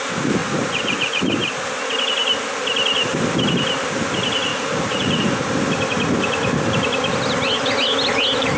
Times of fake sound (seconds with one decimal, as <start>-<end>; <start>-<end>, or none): 0.4-1.2; 4.5-5.2